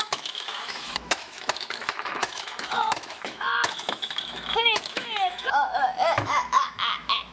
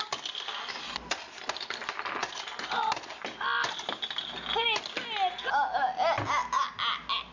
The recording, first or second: second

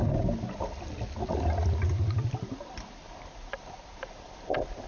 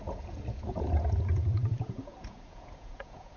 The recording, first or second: first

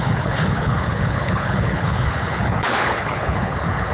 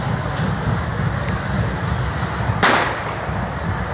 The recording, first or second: second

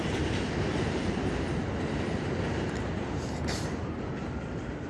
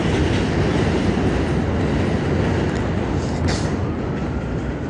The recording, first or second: second